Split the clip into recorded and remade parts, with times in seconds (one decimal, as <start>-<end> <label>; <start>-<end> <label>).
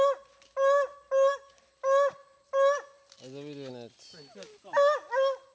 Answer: 0.0-5.5 recorded